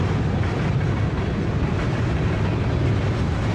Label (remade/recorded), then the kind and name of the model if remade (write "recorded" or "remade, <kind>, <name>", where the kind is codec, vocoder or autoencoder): recorded